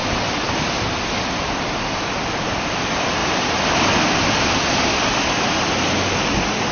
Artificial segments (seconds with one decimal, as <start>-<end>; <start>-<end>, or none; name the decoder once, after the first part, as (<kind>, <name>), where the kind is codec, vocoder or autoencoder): 3.2-3.8 (vocoder, BigVGAN v2)